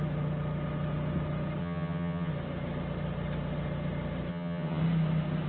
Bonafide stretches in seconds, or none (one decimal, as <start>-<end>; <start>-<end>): 0.0-1.6; 2.3-4.3; 4.8-5.5